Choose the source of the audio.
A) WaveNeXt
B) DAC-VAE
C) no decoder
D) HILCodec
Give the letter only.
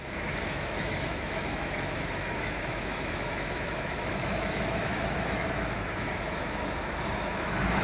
B